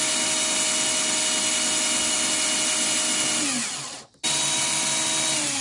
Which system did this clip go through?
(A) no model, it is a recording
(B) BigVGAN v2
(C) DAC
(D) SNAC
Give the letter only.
A